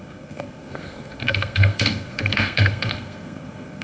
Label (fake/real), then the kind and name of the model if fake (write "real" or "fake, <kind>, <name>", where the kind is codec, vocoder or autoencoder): fake, codec, SNAC